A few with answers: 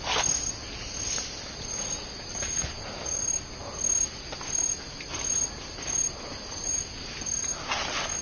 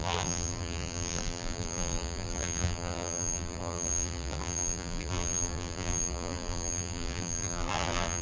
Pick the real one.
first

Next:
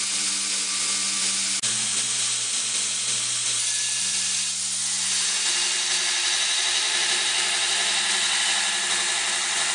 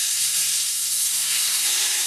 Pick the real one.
first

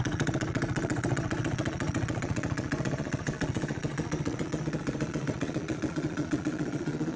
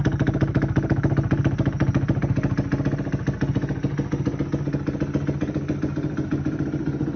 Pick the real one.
second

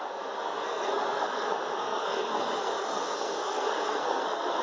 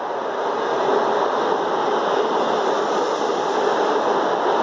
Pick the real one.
second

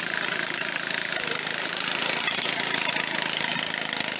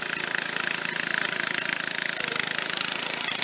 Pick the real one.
second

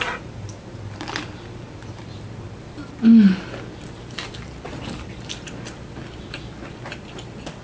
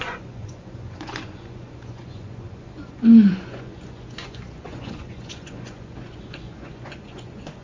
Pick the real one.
first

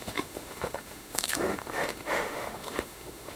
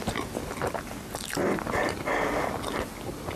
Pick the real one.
second